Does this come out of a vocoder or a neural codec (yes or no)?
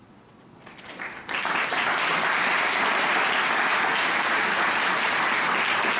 no